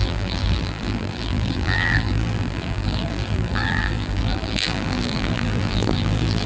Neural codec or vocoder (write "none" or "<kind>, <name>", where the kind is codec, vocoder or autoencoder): vocoder, BigVGAN v2